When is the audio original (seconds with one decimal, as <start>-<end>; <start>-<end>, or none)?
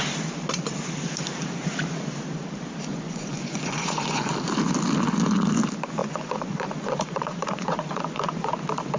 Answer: 0.0-2.9; 4.3-6.0; 8.5-9.0